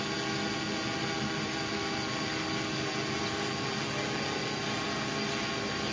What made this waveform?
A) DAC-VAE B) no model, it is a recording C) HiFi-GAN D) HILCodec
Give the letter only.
B